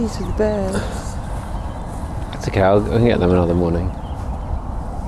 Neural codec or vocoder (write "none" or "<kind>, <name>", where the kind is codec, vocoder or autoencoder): none